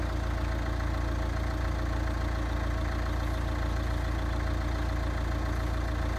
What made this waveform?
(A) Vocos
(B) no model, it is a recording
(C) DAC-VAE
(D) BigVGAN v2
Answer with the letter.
B